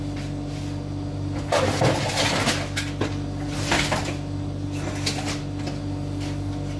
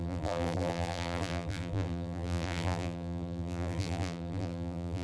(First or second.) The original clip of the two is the first